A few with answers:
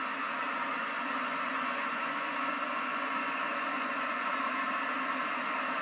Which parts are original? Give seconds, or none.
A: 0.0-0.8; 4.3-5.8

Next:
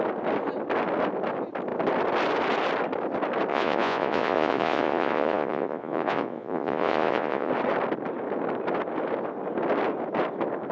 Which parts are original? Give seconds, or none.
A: 0.0-3.5; 7.5-10.7

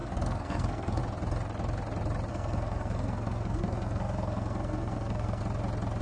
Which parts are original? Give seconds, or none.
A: 1.0-2.3; 5.4-6.0